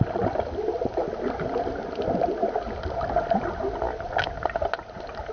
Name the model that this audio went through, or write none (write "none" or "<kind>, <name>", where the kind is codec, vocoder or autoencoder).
none